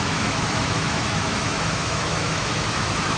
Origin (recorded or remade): remade